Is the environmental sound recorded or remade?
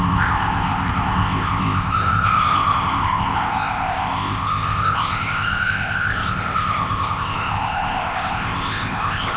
remade